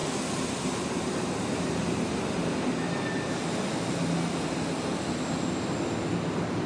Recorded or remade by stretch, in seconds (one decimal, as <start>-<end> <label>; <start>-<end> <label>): 0.0-6.7 recorded